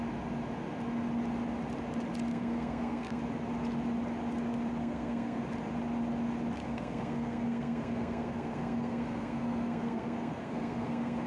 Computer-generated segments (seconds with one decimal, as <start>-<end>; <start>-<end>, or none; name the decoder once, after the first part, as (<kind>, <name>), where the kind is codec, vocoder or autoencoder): 2.3-3.2 (codec, SNAC); 4.8-5.4; 6.6-11.3